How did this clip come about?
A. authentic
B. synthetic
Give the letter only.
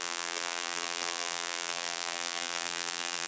B